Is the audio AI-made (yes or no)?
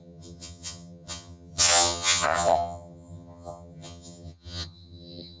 yes